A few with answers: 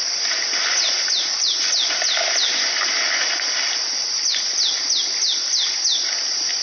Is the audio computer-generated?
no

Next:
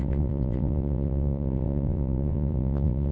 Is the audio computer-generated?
yes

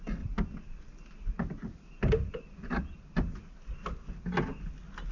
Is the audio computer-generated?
no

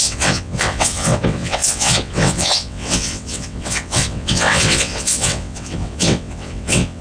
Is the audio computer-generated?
yes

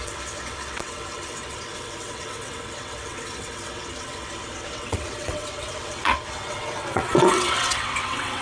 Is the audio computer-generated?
yes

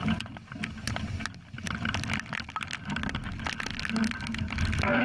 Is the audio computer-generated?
no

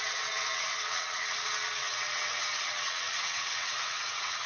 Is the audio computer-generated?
yes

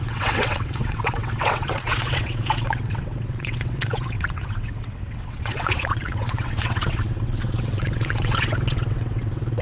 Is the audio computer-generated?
yes